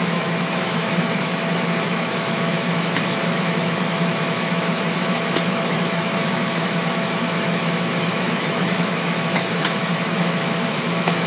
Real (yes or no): no